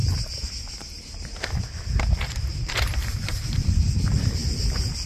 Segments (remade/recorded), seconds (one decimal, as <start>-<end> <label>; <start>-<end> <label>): 0.0-2.2 recorded; 2.2-4.4 remade; 4.4-5.1 recorded